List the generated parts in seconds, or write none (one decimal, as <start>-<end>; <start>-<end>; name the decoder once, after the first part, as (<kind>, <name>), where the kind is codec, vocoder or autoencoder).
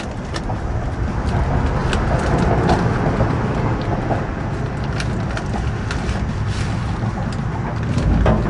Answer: none